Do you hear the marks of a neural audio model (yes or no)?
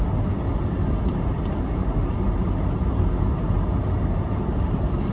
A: no